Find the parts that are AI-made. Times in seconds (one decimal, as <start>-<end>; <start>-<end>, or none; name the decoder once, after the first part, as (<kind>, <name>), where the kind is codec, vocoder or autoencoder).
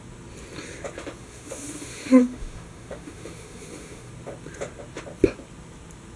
1.2-4.1 (autoencoder, DAC-VAE)